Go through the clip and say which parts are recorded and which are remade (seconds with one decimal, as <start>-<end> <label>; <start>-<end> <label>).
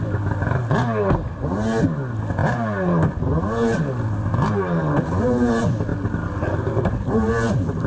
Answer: 0.0-7.9 recorded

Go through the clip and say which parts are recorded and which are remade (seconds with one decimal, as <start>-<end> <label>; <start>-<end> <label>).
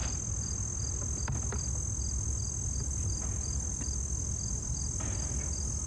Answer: 0.0-5.9 recorded